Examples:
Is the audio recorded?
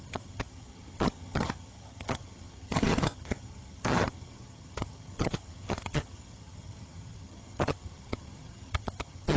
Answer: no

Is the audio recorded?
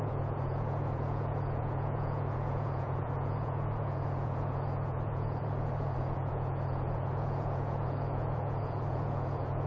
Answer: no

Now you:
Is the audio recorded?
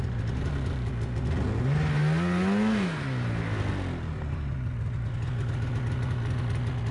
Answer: yes